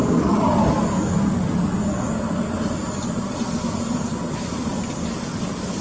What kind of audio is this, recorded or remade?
recorded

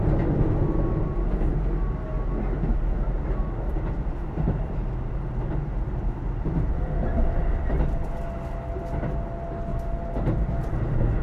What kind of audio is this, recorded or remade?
recorded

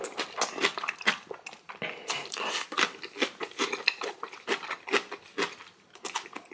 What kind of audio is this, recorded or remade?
recorded